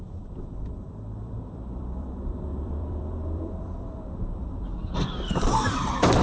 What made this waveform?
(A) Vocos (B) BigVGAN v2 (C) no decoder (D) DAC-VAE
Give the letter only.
B